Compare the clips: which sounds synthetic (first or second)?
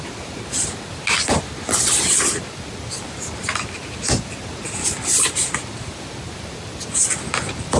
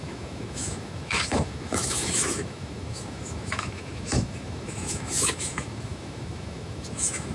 second